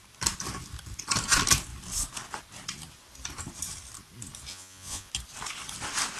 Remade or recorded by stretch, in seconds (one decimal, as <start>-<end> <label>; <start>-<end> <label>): 0.0-4.5 recorded; 4.5-5.1 remade; 5.1-6.2 recorded